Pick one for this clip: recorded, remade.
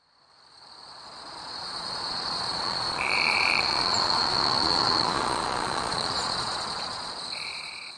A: remade